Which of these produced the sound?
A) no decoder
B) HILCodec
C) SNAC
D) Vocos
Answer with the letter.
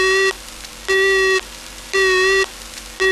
A